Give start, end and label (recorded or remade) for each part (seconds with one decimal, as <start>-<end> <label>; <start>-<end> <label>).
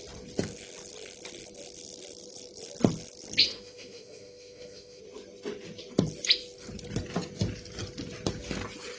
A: 0.0-3.4 recorded; 3.4-5.0 remade; 5.0-9.0 recorded